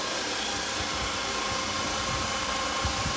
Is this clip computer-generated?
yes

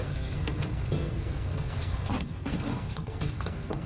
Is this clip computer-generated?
yes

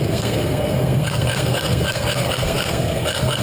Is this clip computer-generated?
yes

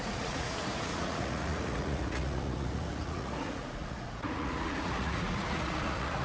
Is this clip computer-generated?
yes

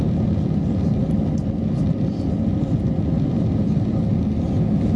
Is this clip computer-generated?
no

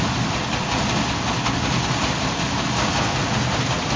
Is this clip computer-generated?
no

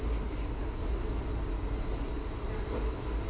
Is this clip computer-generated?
no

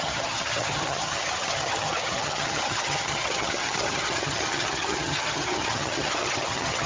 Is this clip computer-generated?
yes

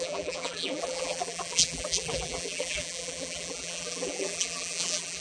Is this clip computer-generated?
yes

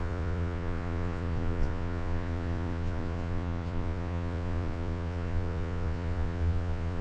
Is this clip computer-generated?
yes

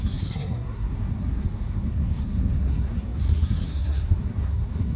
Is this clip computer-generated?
yes